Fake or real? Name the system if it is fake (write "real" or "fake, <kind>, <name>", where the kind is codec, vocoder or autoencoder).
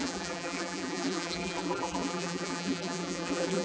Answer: fake, vocoder, BigVGAN v2